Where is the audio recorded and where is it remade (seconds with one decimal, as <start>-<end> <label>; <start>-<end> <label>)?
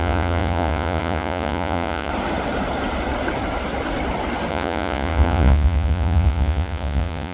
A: 0.0-2.1 remade; 2.1-4.5 recorded; 4.5-7.3 remade